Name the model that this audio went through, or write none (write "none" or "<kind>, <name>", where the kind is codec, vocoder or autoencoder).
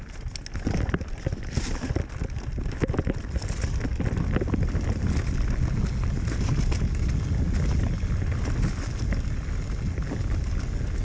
none